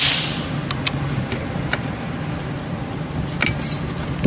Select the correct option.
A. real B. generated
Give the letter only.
A